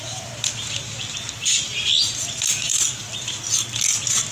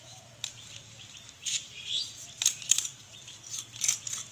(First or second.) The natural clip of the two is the first